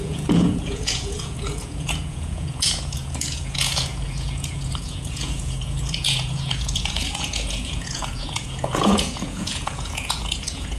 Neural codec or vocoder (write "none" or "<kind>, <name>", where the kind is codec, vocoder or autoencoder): vocoder, Vocos